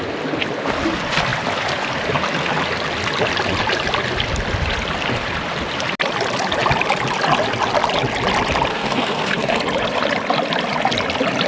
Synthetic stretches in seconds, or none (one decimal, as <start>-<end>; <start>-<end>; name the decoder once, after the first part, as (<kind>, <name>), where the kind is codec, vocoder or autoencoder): 8.7-9.6 (codec, SNAC)